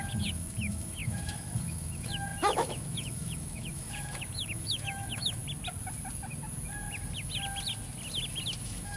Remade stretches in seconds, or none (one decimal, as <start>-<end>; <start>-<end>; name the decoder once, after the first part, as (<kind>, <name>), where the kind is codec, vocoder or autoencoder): 0.0-5.4 (autoencoder, DAC-VAE); 8.6-9.0